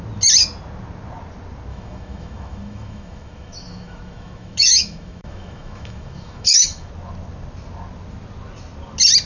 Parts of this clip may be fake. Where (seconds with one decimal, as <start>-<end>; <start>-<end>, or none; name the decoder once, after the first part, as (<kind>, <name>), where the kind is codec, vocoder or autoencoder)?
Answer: 1.7-6.9 (autoencoder, DAC-VAE)